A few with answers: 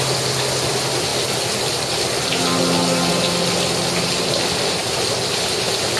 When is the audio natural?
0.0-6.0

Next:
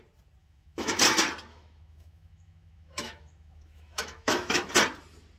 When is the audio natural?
0.0-0.4; 1.0-1.5; 4.7-5.4

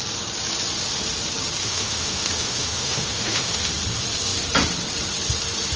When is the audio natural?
0.0-1.6; 3.7-5.8

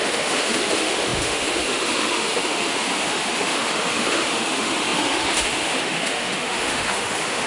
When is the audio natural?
none

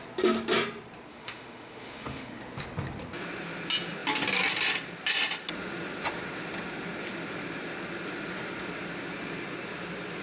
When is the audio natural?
0.0-1.1; 2.4-10.2

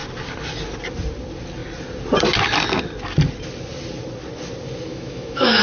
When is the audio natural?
0.0-4.9

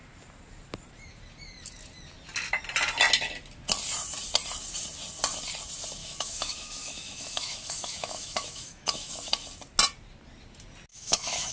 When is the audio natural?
0.0-6.0; 9.3-10.9

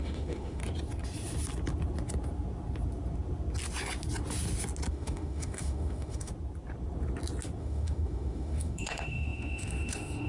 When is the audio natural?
0.6-4.9; 6.3-7.6